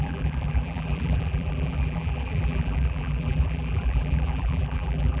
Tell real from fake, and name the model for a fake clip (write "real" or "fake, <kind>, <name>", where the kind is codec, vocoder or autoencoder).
fake, vocoder, BigVGAN v2